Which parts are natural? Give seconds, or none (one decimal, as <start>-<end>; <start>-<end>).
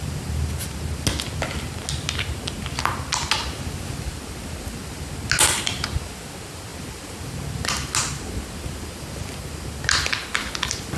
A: 0.0-11.0